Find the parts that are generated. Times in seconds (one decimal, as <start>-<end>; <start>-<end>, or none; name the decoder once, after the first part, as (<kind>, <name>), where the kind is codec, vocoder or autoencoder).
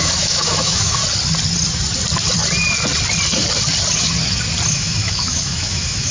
0.0-1.0 (autoencoder, DAC-VAE); 4.7-6.1